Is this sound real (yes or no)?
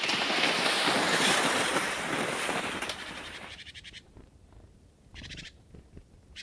no